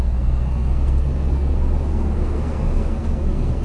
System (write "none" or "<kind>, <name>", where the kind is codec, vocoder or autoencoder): codec, SNAC